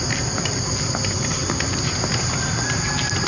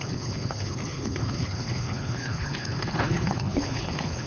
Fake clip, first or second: second